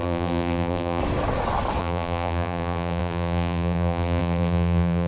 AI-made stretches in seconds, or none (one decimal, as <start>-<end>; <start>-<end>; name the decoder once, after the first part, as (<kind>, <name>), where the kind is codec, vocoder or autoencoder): 0.0-1.0 (vocoder, BigVGAN v2); 1.8-5.1